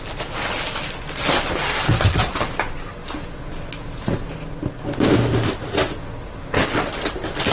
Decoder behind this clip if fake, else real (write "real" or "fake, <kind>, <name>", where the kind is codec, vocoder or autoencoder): real